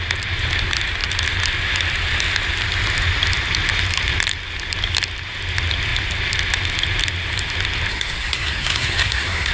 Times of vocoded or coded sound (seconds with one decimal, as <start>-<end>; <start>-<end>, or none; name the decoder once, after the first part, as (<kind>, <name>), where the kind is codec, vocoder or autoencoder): 7.9-9.5 (codec, SNAC)